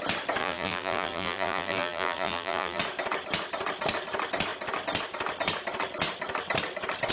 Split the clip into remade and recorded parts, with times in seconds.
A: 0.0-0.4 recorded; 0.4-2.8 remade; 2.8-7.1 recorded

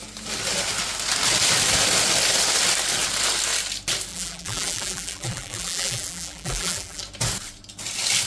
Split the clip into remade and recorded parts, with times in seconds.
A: 0.0-4.1 recorded; 4.1-7.0 remade; 7.0-8.3 recorded